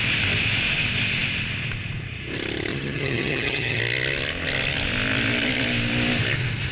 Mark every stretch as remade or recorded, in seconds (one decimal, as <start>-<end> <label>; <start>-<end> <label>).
0.0-2.7 recorded; 2.7-3.8 remade; 3.8-6.7 recorded